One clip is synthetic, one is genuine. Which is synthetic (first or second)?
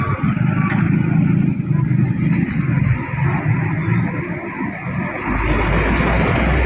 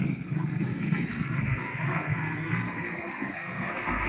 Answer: second